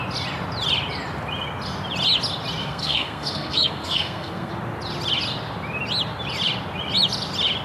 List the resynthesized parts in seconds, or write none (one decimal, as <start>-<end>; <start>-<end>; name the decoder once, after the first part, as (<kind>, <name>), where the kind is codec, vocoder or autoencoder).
2.6-4.5 (codec, SNAC)